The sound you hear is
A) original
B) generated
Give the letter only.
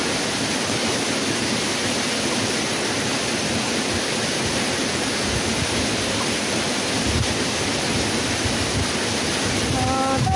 A